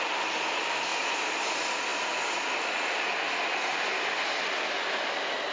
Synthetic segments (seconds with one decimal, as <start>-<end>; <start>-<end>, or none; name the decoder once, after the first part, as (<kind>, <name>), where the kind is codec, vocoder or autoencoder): none